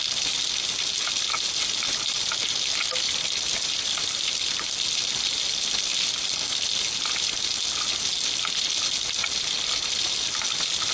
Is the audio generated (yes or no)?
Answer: no